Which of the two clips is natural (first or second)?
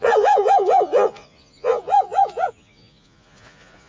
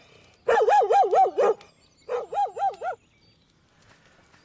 second